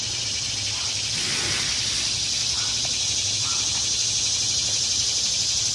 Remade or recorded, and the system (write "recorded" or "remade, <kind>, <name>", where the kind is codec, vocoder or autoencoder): recorded